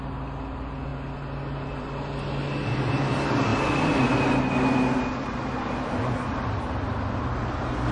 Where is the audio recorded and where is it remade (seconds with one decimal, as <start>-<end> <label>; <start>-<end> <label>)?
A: 0.0-7.9 recorded

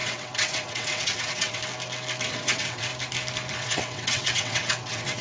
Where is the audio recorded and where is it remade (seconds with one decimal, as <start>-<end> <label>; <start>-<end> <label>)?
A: 0.0-1.6 remade; 1.6-2.3 recorded; 2.3-2.9 remade; 2.9-3.5 recorded; 3.5-5.2 remade